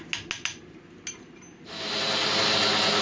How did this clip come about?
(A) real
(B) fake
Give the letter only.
A